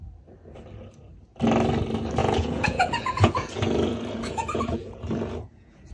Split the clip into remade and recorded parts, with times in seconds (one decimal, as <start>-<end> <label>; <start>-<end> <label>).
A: 0.0-2.2 recorded; 2.2-5.9 remade